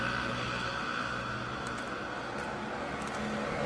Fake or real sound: real